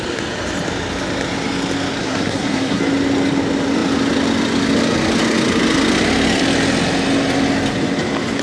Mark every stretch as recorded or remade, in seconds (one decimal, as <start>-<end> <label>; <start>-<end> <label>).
0.0-2.0 recorded; 2.0-2.8 remade; 2.8-8.4 recorded

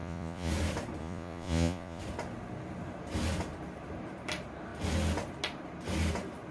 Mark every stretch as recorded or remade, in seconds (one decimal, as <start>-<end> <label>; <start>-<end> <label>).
0.0-0.5 remade; 0.5-1.0 recorded; 1.0-2.0 remade; 2.0-6.5 recorded

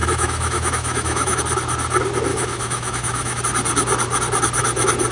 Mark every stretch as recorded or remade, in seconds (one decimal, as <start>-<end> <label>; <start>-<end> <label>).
0.0-1.4 remade; 1.4-2.3 recorded; 2.3-3.4 remade; 3.4-5.1 recorded